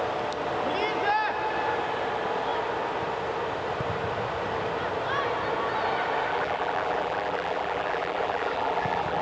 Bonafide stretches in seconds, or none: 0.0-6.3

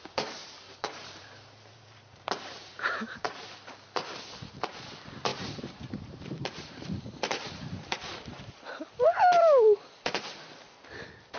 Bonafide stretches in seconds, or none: 0.0-0.4; 3.4-5.3; 8.7-11.4

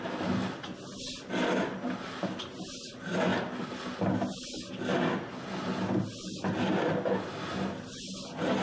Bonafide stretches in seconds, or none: 0.0-8.6

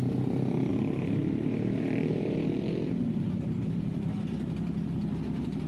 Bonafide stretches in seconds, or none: 0.0-0.7; 4.1-5.7

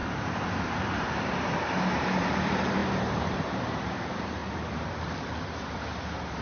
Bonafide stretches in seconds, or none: 4.4-5.5

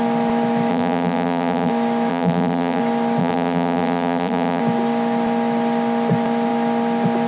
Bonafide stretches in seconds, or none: 0.0-0.7; 1.7-2.1; 2.8-3.2; 4.6-7.3

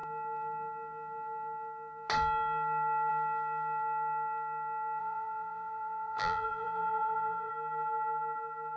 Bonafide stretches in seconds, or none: 0.0-5.0; 7.5-8.8

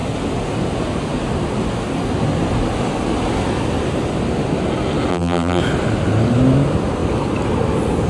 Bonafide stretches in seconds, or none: 0.0-5.1; 5.6-8.1